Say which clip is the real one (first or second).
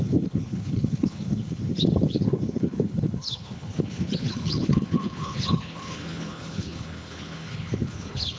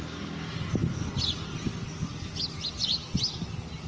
second